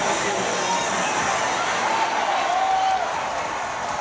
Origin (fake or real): real